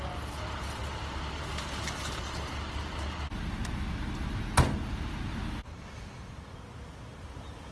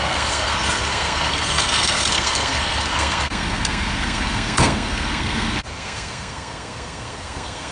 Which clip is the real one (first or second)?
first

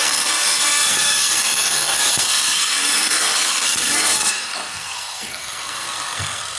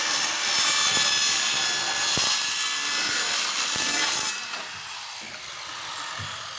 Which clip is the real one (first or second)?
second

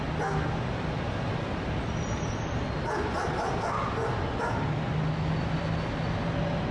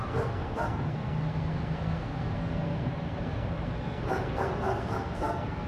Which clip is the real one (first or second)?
first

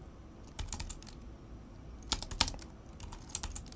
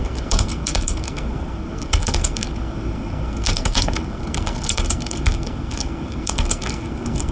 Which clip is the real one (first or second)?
first